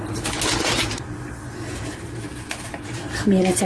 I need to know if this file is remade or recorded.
recorded